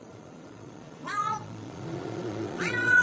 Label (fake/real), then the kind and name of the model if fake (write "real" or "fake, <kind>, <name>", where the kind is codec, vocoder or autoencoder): fake, vocoder, Vocos